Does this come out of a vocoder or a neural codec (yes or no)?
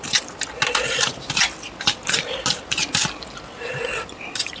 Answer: no